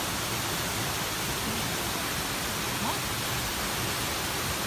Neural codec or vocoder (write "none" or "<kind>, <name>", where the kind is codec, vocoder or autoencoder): none